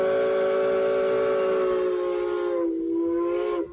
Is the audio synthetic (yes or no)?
no